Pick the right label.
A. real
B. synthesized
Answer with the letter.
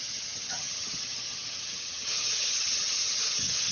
B